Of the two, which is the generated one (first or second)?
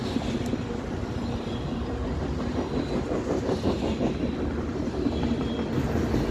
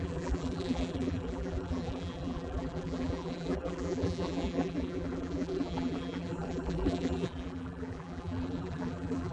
second